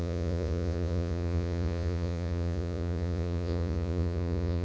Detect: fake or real fake